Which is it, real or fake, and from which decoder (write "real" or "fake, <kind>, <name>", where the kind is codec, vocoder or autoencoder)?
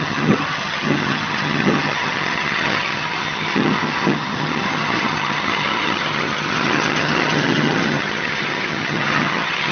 fake, vocoder, HiFi-GAN